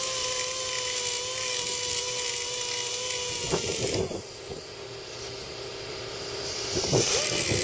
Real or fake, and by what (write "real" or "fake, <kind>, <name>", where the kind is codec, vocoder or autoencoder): real